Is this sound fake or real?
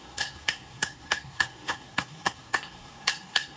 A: fake